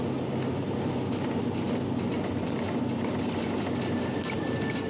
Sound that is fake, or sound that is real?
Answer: real